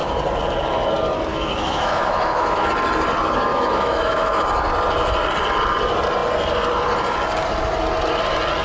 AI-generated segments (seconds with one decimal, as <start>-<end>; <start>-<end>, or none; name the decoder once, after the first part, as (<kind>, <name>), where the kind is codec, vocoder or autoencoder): 1.3-2.7 (autoencoder, DAC-VAE); 3.5-4.4